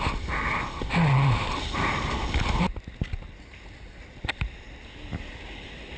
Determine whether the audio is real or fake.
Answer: real